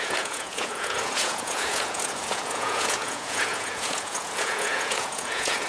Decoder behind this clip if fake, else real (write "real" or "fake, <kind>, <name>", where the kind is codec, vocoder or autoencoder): fake, vocoder, Vocos